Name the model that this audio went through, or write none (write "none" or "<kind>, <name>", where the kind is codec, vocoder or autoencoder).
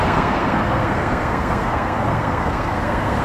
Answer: codec, SNAC